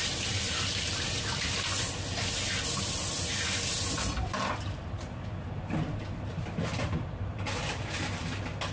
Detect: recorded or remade recorded